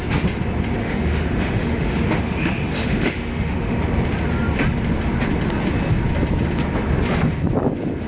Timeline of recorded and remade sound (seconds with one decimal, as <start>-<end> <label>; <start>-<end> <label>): 0.0-0.8 recorded; 0.8-3.8 remade; 3.8-8.1 recorded